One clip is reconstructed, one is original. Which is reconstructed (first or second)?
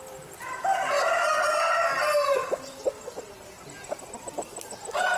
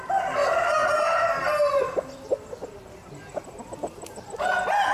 first